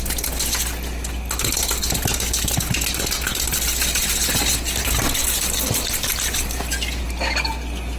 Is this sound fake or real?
real